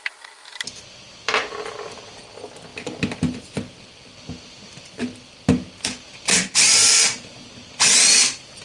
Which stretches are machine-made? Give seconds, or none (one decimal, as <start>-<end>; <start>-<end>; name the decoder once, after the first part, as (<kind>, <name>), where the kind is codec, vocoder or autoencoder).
none